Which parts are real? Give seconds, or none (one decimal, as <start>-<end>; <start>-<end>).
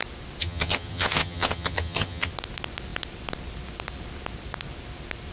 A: 0.0-0.4; 2.3-5.3